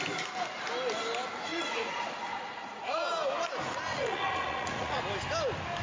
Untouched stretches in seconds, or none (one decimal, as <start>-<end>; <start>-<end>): 0.0-1.5; 3.1-3.9; 5.0-5.8